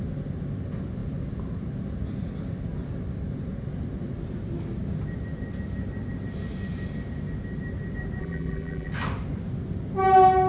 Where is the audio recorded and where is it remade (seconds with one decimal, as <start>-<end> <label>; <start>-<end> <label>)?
0.0-8.2 recorded; 8.2-8.9 remade; 8.9-10.5 recorded